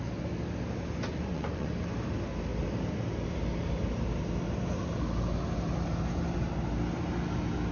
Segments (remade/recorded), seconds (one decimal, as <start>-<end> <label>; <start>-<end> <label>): 0.0-1.1 recorded; 1.1-1.7 remade; 1.7-7.7 recorded